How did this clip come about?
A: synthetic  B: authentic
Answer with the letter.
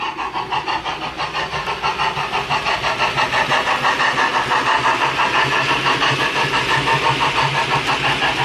B